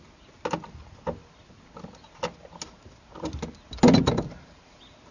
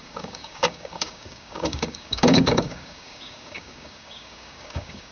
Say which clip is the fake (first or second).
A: second